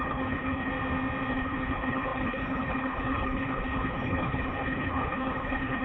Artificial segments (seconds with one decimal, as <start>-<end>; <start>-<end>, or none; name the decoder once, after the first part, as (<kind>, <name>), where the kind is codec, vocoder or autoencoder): 0.0-0.7 (codec, HILCodec); 1.3-5.8